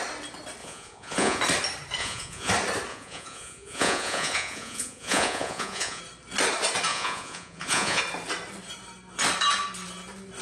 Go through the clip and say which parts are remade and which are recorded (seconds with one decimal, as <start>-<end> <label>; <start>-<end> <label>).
0.0-0.6 recorded; 0.6-1.4 remade; 1.4-2.0 recorded; 2.0-2.5 remade; 2.5-2.9 recorded; 2.9-6.0 remade; 6.0-6.9 recorded; 6.9-8.0 remade; 8.0-10.4 recorded